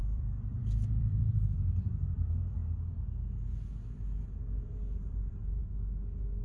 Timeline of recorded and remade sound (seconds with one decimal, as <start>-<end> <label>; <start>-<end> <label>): 0.0-2.6 remade; 2.6-5.0 recorded; 5.0-5.6 remade; 5.6-6.4 recorded